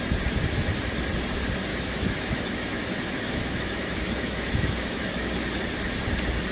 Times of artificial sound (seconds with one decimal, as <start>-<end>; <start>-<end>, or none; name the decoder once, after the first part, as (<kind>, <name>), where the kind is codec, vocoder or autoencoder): 1.7-5.6 (autoencoder, DAC-VAE)